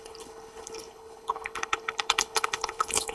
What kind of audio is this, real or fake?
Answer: fake